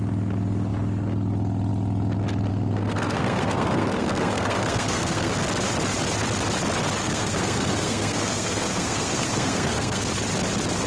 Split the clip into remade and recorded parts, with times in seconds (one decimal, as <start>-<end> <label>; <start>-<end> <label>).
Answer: 0.0-2.5 recorded; 2.5-5.3 remade; 5.3-7.0 recorded; 7.0-10.0 remade; 10.0-10.9 recorded